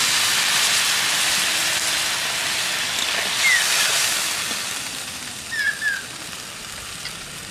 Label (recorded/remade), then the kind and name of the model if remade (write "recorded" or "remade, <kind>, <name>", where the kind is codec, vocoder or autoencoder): recorded